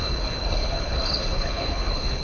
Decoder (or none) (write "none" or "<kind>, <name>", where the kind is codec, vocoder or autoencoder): codec, HILCodec